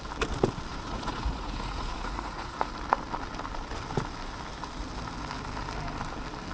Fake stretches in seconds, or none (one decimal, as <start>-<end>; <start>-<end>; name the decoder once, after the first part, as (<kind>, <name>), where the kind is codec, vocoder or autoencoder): 0.7-2.7 (vocoder, Vocos)